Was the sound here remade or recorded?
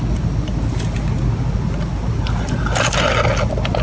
recorded